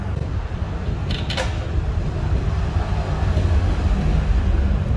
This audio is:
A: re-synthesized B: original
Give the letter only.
B